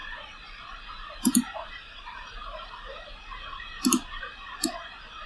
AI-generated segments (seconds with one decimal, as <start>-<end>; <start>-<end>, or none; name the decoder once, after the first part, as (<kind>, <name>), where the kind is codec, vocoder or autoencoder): 0.0-3.2 (vocoder, BigVGAN v2)